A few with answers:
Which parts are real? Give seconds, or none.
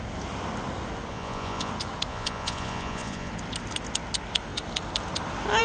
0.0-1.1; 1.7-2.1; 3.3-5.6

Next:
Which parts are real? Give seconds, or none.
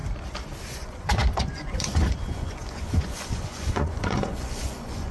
0.0-0.7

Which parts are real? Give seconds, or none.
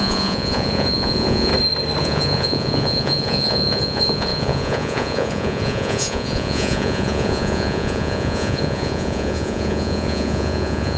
1.5-2.0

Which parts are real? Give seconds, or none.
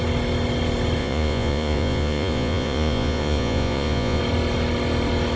0.0-1.0; 4.2-5.4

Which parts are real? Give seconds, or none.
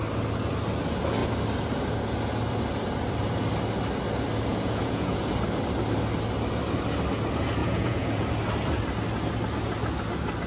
0.0-4.5; 5.2-7.6; 8.3-10.5